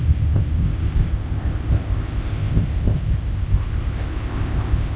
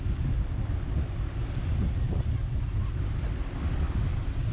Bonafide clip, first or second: second